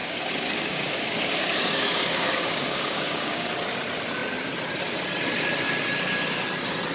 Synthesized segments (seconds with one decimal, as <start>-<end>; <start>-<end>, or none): 0.0-3.5